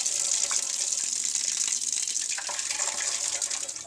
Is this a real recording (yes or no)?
yes